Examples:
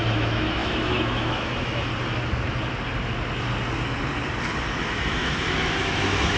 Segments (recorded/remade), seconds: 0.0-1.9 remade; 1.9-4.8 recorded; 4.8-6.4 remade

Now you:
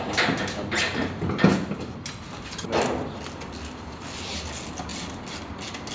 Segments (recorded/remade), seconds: 0.0-5.9 recorded

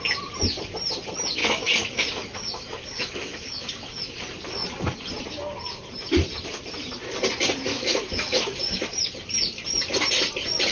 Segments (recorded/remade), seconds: 0.0-1.4 recorded; 1.4-4.0 remade; 4.0-7.7 recorded; 7.7-9.0 remade; 9.0-10.7 recorded

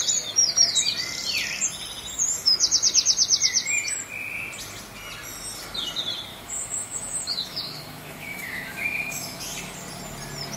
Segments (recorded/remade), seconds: 0.0-6.3 recorded; 6.3-9.4 remade; 9.4-10.6 recorded

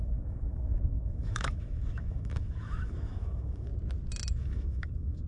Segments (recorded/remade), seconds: 0.0-3.7 remade; 3.7-4.3 recorded; 4.3-5.3 remade

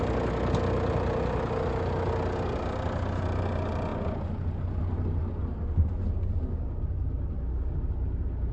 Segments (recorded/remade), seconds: 0.0-8.5 recorded

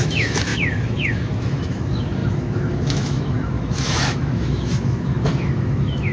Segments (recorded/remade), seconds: 0.0-6.1 remade

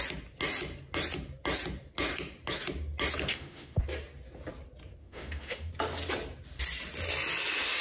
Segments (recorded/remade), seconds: 0.0-3.3 recorded; 3.3-3.8 remade; 3.8-5.0 recorded; 5.0-5.7 remade; 5.7-7.8 recorded